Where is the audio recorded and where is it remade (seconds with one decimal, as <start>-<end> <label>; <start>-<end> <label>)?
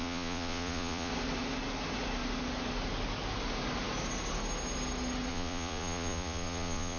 0.0-1.1 remade; 1.1-5.3 recorded; 5.3-7.0 remade